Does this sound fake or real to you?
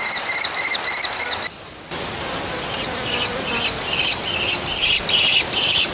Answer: real